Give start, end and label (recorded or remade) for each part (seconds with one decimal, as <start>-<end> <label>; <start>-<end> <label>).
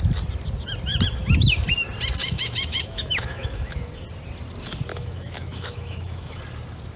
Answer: 0.0-2.2 recorded; 2.2-3.9 remade; 3.9-4.9 recorded; 4.9-6.4 remade; 6.4-7.0 recorded